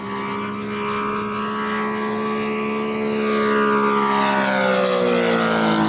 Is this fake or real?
real